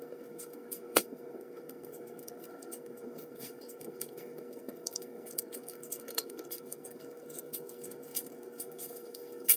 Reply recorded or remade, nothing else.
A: remade